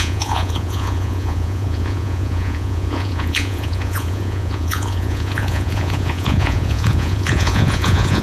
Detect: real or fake fake